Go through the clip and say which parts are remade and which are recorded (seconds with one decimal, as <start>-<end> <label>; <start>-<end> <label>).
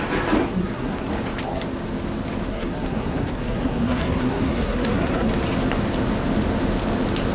0.0-0.4 recorded; 0.4-1.1 remade; 1.1-2.5 recorded; 2.5-5.3 remade; 5.3-7.3 recorded